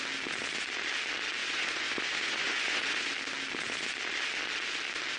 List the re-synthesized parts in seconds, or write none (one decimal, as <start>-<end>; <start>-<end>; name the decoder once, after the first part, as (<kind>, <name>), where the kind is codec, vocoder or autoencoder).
1.4-3.0 (vocoder, Vocos)